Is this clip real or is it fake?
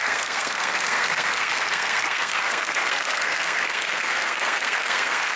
fake